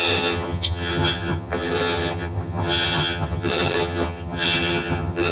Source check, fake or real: fake